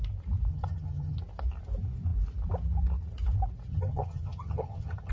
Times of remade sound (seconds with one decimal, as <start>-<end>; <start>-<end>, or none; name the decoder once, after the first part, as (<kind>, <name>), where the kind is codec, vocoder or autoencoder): 0.5-1.2 (vocoder, HiFi-GAN); 3.7-5.1